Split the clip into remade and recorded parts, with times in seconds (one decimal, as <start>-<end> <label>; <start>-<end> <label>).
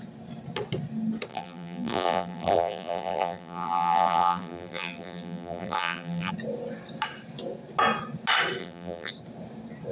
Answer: 0.0-1.3 recorded; 1.3-6.3 remade; 6.3-8.6 recorded; 8.6-9.1 remade; 9.1-9.9 recorded